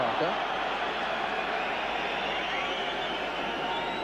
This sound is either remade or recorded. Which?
recorded